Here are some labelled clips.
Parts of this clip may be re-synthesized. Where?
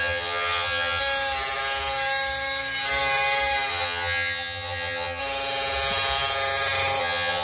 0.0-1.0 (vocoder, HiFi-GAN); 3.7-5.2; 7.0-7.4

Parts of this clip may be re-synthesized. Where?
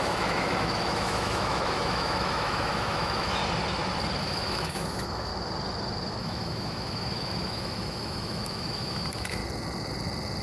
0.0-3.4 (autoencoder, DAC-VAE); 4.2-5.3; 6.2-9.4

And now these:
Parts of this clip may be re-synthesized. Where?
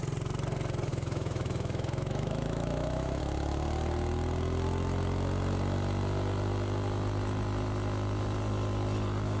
0.9-3.2 (autoencoder, DAC-VAE)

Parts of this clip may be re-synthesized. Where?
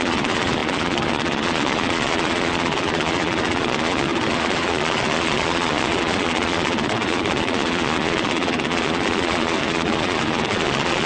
0.0-11.1 (vocoder, Vocos)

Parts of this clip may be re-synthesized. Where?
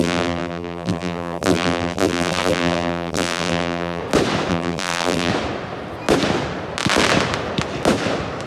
0.0-4.0 (vocoder, BigVGAN v2); 4.5-5.3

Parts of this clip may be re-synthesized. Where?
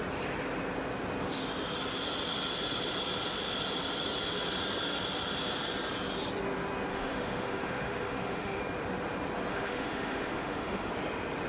6.9-8.6 (autoencoder, DAC-VAE); 9.5-10.9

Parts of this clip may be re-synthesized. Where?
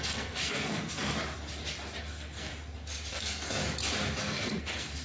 0.0-1.1 (codec, SNAC); 2.0-2.5; 3.1-3.6; 4.2-5.0